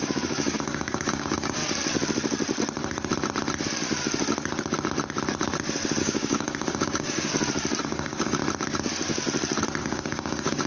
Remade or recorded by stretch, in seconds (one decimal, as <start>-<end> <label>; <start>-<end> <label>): 0.0-1.6 remade; 1.6-6.0 recorded; 6.0-7.3 remade; 7.3-7.8 recorded; 7.8-8.4 remade; 8.4-9.8 recorded; 9.8-10.7 remade